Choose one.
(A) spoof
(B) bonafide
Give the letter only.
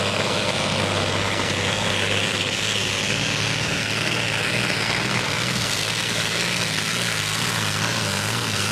A